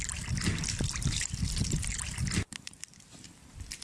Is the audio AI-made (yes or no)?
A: no